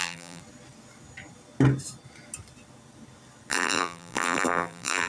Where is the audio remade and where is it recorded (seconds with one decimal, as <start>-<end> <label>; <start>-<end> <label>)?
0.0-0.4 remade; 0.4-3.5 recorded; 3.5-5.1 remade